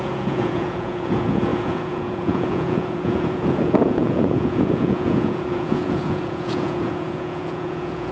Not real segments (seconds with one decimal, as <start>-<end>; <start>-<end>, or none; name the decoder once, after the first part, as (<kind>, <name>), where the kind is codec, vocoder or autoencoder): 0.0-8.1 (vocoder, Vocos)